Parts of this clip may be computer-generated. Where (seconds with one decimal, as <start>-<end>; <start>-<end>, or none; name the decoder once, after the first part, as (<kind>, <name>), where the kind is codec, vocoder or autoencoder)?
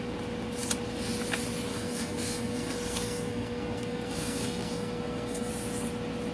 1.7-5.5 (codec, SNAC)